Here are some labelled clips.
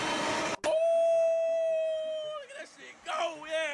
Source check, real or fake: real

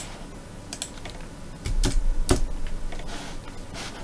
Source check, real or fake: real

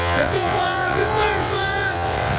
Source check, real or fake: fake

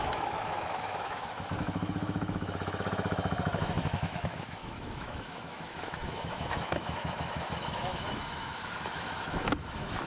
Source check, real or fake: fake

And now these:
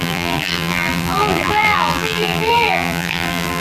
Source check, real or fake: fake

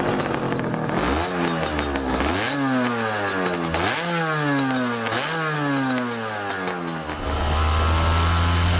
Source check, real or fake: real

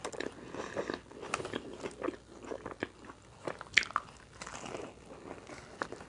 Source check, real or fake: real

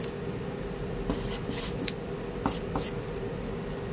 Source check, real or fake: real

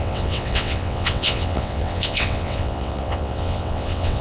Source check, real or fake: fake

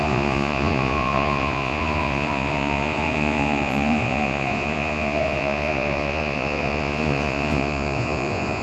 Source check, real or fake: fake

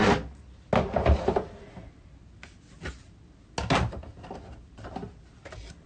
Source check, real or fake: real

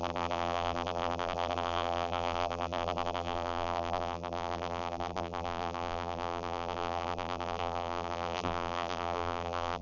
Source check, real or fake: fake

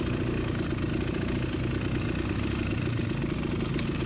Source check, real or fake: real